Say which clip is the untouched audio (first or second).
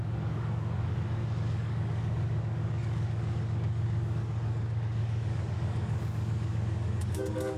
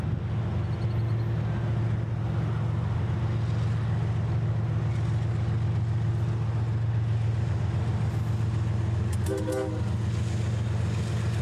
second